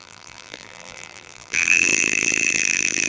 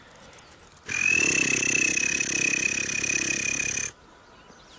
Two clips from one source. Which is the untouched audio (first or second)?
second